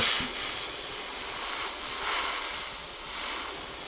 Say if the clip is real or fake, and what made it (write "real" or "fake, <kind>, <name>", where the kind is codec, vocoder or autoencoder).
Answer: real